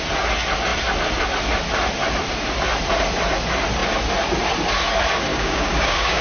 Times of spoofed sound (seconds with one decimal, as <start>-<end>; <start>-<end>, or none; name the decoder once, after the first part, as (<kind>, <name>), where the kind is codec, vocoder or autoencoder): 5.3-6.2 (codec, DAC)